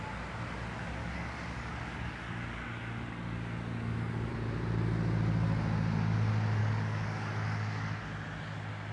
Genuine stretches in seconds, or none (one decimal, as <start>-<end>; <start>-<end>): 0.0-1.0; 4.3-6.6; 8.0-8.9